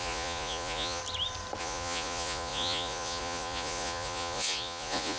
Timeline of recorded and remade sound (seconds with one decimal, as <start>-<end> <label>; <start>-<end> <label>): 0.0-1.0 remade; 1.0-1.6 recorded; 1.6-5.2 remade